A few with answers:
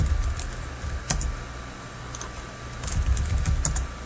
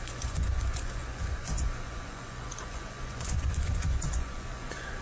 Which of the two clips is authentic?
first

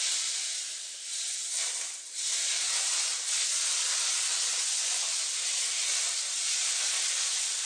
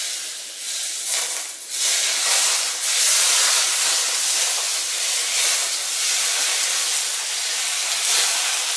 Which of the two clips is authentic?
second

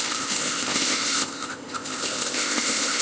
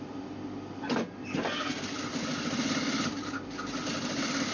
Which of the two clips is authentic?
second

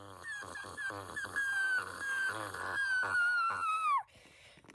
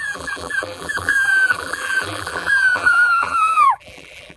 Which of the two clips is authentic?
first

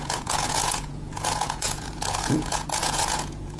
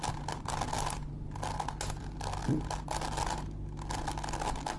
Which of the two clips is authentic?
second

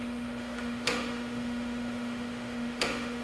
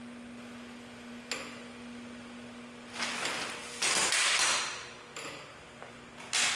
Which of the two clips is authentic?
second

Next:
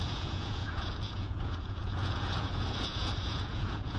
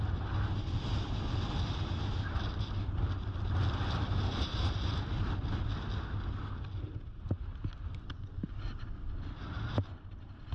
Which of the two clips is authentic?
second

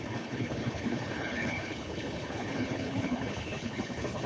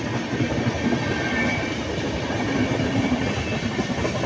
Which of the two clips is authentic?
second